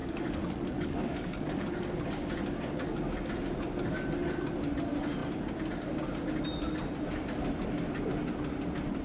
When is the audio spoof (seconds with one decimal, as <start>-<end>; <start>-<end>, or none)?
0.0-2.0

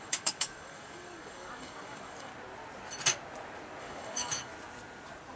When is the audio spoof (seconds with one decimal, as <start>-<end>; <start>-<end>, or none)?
0.0-2.3; 3.8-4.5

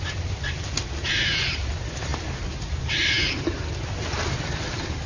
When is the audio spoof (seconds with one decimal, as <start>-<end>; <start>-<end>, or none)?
none